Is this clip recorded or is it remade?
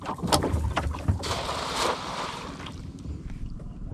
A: remade